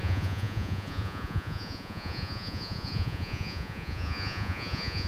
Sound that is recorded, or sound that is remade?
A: remade